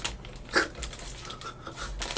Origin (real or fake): real